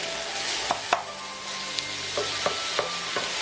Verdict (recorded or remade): recorded